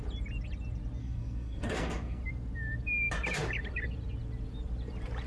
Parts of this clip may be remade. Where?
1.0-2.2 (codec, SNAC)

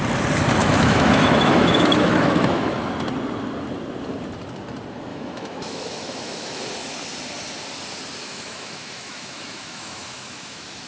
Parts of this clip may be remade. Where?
0.6-2.9 (autoencoder, DAC-VAE); 5.1-6.6; 8.2-10.9

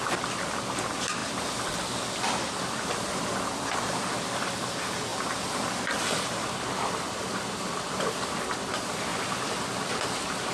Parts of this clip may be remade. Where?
none

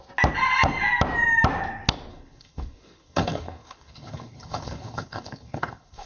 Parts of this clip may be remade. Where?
2.1-6.1 (codec, HILCodec)

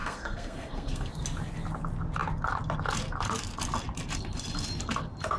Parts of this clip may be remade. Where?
0.0-1.1 (codec, SNAC)

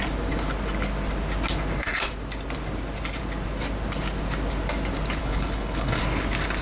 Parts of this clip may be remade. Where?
5.2-6.0 (codec, HILCodec)

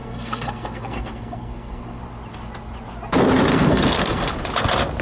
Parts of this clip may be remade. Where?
0.0-2.0 (codec, SNAC); 3.5-4.3